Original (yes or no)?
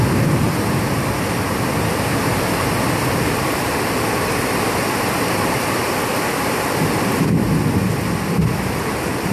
yes